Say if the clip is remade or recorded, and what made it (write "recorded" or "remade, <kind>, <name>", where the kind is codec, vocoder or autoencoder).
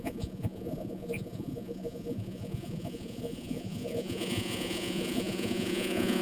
remade, vocoder, Vocos